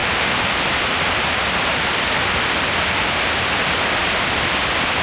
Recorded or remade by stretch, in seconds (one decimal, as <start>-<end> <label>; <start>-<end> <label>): 0.0-5.0 recorded